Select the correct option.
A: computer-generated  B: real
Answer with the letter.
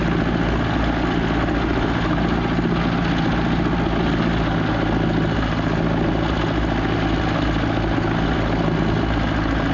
B